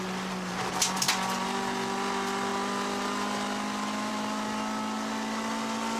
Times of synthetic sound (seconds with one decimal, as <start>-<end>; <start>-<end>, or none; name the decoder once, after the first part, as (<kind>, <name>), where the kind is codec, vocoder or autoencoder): none

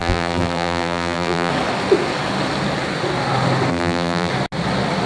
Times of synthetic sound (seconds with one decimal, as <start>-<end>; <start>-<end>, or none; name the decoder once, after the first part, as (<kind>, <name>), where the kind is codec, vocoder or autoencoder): 0.0-1.5 (vocoder, BigVGAN v2); 3.7-4.3

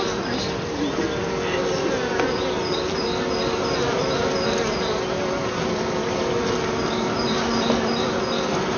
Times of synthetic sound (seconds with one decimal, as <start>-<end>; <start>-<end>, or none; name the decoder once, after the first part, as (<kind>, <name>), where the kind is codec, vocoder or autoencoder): none

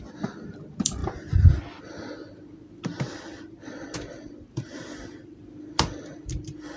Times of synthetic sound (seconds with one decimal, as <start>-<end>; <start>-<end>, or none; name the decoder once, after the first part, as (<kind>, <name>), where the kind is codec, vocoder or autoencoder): 0.0-1.0 (vocoder, BigVGAN v2); 1.8-6.8

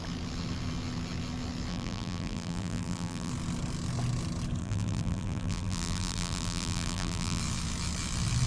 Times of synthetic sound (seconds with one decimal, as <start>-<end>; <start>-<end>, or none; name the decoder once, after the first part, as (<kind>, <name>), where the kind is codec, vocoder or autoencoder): 1.7-3.3 (vocoder, BigVGAN v2); 4.6-7.4